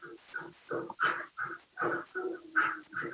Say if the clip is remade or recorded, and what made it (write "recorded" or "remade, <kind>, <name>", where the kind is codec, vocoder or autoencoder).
recorded